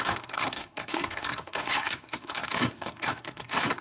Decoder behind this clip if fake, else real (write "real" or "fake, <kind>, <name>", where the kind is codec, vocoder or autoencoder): fake, codec, SNAC